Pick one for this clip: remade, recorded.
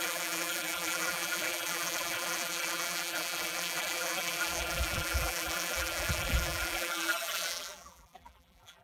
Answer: remade